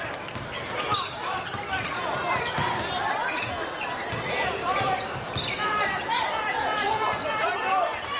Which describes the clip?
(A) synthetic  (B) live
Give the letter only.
B